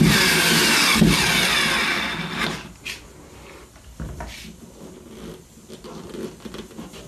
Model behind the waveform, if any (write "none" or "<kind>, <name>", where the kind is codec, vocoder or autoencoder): none